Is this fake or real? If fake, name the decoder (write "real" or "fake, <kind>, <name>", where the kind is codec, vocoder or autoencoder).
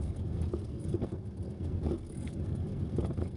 fake, codec, SNAC